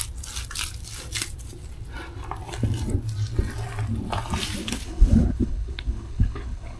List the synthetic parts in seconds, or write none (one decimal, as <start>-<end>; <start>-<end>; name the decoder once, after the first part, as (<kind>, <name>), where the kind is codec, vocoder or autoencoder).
4.6-6.8 (codec, HILCodec)